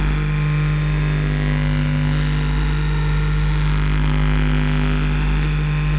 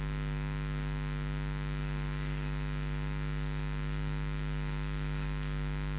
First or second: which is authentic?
second